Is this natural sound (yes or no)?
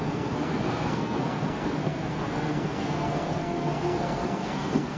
no